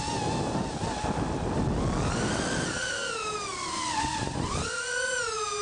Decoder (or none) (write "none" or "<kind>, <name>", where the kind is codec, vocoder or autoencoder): none